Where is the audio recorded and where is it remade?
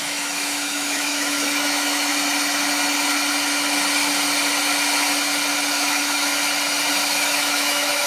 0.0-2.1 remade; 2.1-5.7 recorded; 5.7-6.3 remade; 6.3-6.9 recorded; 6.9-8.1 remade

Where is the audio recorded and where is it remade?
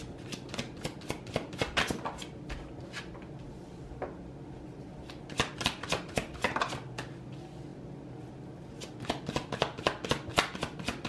0.0-11.1 recorded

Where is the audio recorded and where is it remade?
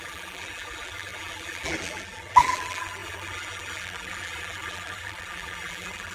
0.0-6.1 remade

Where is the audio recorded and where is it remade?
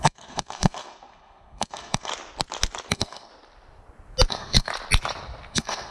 0.0-2.1 remade; 2.1-2.9 recorded; 2.9-3.3 remade; 3.3-4.3 recorded; 4.3-4.7 remade; 4.7-5.5 recorded; 5.5-5.9 remade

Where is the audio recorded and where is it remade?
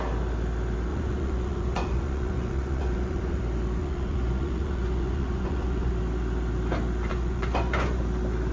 0.0-0.9 recorded; 0.9-3.4 remade; 3.4-3.8 recorded; 3.8-5.9 remade; 5.9-7.1 recorded; 7.1-8.0 remade; 8.0-8.5 recorded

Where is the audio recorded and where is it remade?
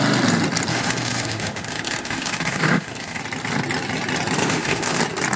0.0-0.7 recorded; 0.7-3.2 remade; 3.2-4.4 recorded; 4.4-5.0 remade; 5.0-5.4 recorded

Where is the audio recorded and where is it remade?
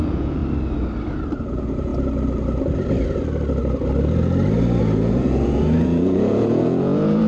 0.0-0.4 remade; 0.4-1.4 recorded; 1.4-1.9 remade; 1.9-4.8 recorded; 4.8-7.3 remade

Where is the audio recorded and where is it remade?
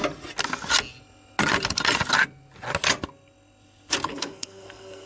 0.0-4.1 recorded; 4.1-5.1 remade